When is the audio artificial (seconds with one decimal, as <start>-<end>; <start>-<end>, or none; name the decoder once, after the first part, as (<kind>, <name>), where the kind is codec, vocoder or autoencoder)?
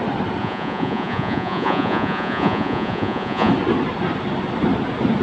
0.4-3.5 (vocoder, Vocos)